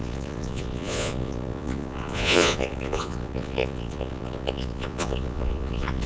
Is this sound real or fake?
fake